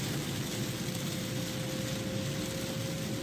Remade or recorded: recorded